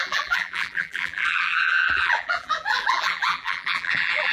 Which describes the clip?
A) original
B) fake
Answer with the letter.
B